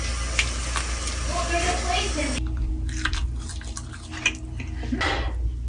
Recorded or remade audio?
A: recorded